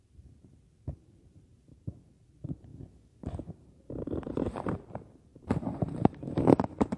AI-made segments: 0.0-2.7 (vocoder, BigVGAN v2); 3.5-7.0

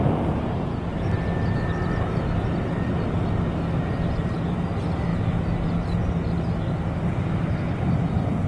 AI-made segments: none

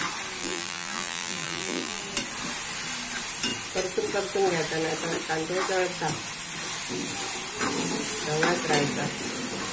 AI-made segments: 0.4-2.0 (vocoder, BigVGAN v2)

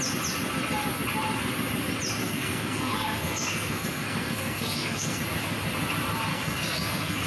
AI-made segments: 2.2-5.2 (codec, SNAC); 6.3-7.3

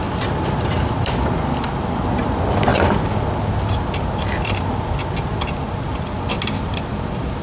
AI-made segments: none

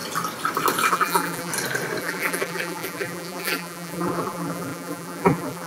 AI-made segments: 0.9-1.5 (vocoder, BigVGAN v2); 2.0-5.7

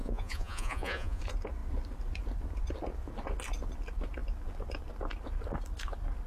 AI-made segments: 0.0-1.2 (vocoder, Vocos)